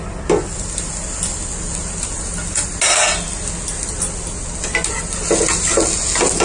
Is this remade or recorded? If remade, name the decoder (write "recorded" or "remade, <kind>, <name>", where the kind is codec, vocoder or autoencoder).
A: recorded